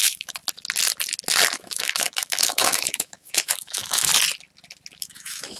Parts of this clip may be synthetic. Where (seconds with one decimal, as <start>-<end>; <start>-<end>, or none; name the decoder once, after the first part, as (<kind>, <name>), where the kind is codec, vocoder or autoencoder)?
0.0-0.4 (autoencoder, DAC-VAE); 1.5-4.1; 4.9-5.6